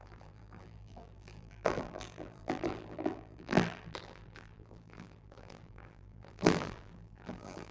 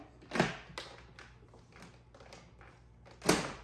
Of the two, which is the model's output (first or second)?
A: first